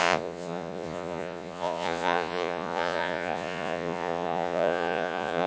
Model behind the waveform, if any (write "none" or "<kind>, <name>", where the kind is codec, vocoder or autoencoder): vocoder, Vocos